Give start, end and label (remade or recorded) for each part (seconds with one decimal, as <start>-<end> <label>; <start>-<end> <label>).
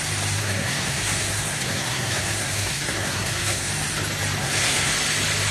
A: 0.0-0.4 recorded; 0.4-3.7 remade; 3.7-4.4 recorded; 4.4-4.9 remade; 4.9-5.5 recorded